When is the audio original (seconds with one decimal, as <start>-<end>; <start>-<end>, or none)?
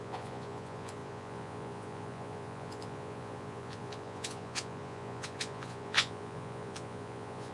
none